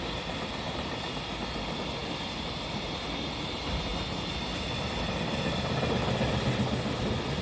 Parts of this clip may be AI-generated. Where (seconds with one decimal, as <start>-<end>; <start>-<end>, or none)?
none